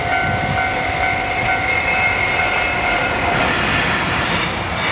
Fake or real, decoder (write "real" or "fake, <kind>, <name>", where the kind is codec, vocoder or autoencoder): real